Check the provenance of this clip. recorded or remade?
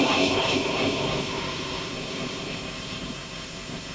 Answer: remade